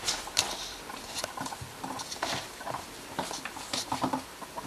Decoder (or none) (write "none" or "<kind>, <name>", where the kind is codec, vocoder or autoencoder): none